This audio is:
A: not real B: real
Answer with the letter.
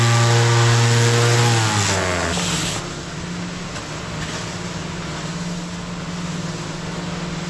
B